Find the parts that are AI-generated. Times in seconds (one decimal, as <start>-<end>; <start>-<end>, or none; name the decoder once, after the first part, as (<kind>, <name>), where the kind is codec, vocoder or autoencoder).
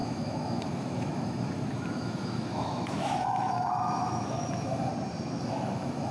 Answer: 0.0-4.9 (autoencoder, DAC-VAE); 5.4-6.1